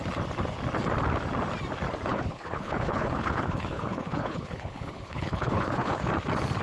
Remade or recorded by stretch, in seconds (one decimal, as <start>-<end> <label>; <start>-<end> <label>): 0.0-2.1 recorded; 2.1-6.1 remade; 6.1-6.6 recorded